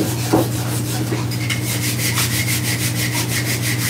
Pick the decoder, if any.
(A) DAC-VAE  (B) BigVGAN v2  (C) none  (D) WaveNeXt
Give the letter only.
C